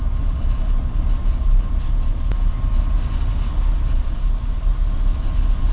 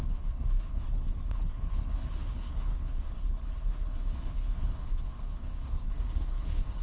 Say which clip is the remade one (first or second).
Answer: second